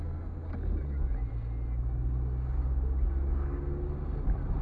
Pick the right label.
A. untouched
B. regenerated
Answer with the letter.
A